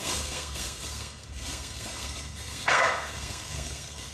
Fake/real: fake